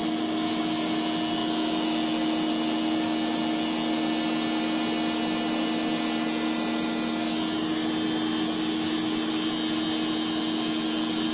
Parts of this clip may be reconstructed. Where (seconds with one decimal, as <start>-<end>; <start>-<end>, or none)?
none